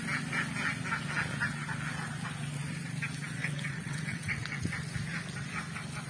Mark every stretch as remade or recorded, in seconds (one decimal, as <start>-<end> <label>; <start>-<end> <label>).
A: 0.0-3.4 recorded; 3.4-4.6 remade; 4.6-6.1 recorded